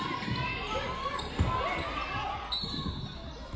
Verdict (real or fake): real